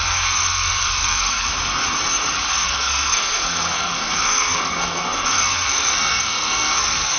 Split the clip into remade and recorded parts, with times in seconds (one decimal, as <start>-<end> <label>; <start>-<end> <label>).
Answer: 0.0-1.5 remade; 1.5-2.5 recorded; 2.5-7.2 remade